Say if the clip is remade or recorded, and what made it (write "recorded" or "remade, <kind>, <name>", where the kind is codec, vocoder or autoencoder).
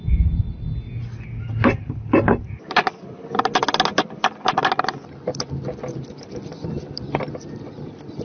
recorded